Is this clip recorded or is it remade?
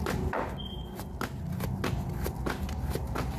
recorded